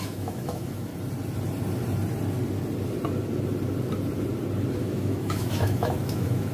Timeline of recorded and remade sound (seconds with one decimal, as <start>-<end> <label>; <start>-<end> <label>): 0.0-0.9 remade; 0.9-4.8 recorded; 4.8-6.5 remade